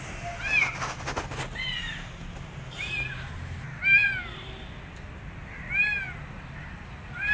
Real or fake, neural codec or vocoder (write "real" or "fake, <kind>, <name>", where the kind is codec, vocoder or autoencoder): real